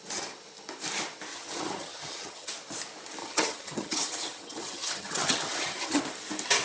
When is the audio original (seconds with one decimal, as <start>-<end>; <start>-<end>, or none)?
0.0-1.3; 2.5-3.2; 6.0-6.6